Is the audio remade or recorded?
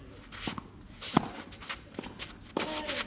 recorded